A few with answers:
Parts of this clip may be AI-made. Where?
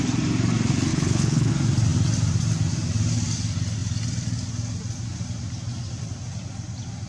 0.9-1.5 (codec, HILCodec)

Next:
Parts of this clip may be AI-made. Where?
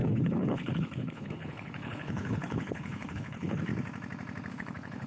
0.0-3.7 (codec, HILCodec); 4.5-5.1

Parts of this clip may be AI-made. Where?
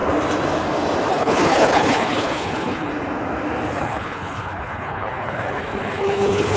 1.1-2.9 (codec, HILCodec); 3.7-6.6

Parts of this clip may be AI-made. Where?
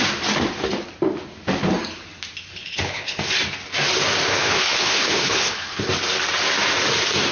2.5-3.2 (codec, HILCodec); 4.3-5.8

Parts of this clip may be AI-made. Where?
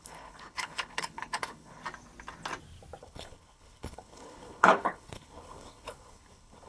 0.0-1.8 (codec, HILCodec); 3.0-6.7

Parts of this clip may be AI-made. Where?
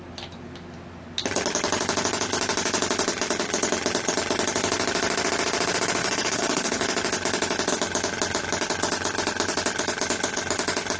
6.0-6.8 (codec, HILCodec)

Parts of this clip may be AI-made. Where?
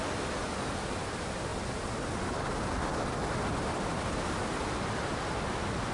none